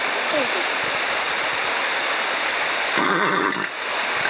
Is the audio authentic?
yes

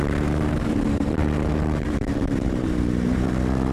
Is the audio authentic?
no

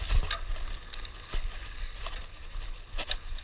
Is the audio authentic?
yes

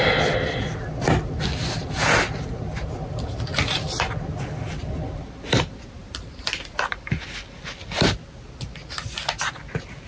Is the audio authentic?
yes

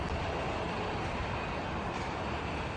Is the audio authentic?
yes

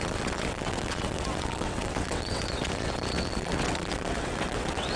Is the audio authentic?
no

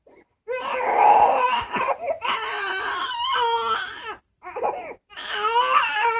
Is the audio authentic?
yes